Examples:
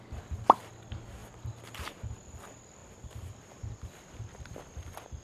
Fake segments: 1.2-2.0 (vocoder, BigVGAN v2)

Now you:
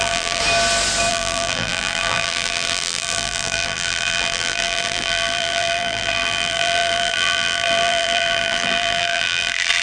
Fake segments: 0.0-0.4 (vocoder, BigVGAN v2); 1.1-9.8

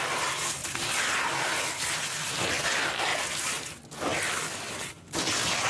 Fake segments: 0.6-1.4 (vocoder, BigVGAN v2)

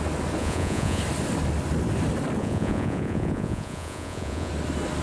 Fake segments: 0.4-1.0 (vocoder, Vocos); 2.4-4.5

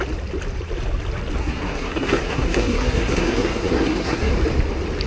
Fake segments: 1.4-4.3 (codec, SNAC)

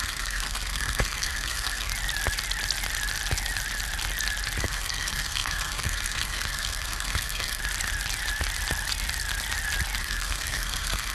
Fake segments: 0.0-1.9 (codec, SNAC); 4.6-7.6; 10.0-11.1